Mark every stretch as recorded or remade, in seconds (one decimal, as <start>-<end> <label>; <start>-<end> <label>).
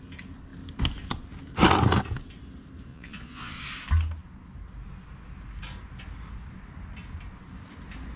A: 0.0-2.9 recorded; 2.9-3.5 remade; 3.5-8.2 recorded